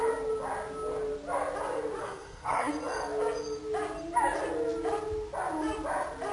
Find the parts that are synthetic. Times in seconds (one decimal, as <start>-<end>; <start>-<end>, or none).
2.0-2.7